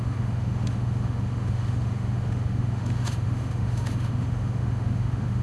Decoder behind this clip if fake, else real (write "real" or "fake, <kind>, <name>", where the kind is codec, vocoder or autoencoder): fake, autoencoder, DAC-VAE